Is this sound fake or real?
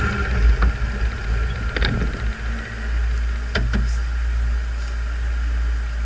real